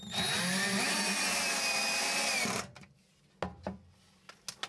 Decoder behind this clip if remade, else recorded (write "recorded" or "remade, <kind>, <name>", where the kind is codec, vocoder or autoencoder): recorded